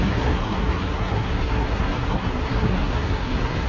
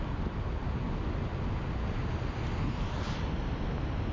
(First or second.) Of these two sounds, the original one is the second